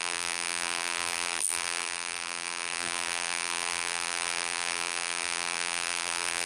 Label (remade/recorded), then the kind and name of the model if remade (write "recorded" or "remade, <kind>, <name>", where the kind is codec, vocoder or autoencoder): remade, vocoder, BigVGAN v2